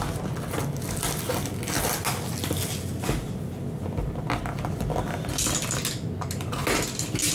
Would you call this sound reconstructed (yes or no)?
no